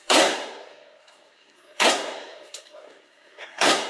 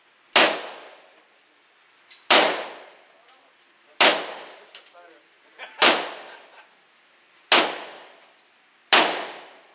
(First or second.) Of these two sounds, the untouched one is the second